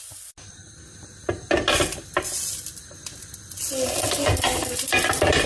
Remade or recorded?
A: recorded